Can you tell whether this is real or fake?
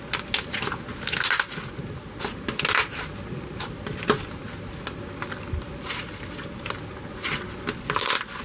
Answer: real